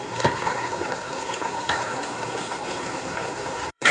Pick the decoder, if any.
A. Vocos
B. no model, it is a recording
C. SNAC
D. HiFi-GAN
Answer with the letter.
C